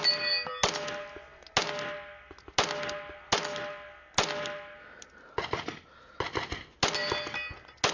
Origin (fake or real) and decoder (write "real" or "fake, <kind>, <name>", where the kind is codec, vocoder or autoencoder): real